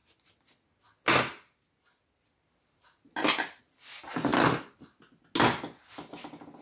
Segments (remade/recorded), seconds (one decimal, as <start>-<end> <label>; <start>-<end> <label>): 0.0-6.6 recorded

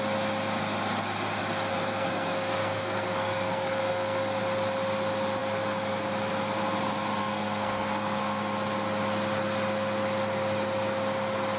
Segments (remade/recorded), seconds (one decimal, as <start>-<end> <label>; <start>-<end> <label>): 0.0-1.7 recorded; 1.7-4.4 remade; 4.4-7.2 recorded; 7.2-8.4 remade; 8.4-11.6 recorded